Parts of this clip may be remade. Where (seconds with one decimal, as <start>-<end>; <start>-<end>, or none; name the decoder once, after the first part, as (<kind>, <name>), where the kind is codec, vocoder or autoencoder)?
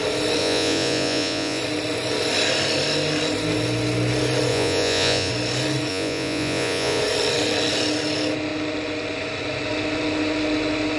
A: 0.4-1.6 (vocoder, Vocos); 4.5-5.3; 5.9-7.0